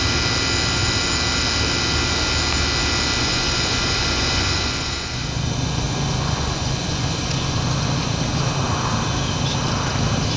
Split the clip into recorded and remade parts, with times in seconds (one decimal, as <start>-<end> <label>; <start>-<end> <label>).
0.0-3.2 recorded; 3.2-8.1 remade; 8.1-10.4 recorded